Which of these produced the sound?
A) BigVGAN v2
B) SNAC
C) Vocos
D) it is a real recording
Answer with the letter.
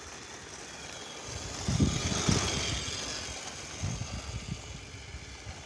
D